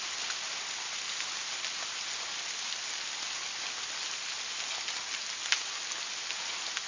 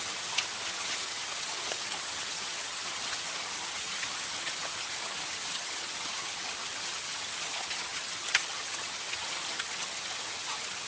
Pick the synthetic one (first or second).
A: second